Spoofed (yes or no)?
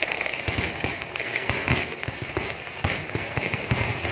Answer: yes